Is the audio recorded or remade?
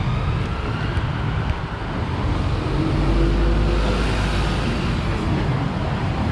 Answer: recorded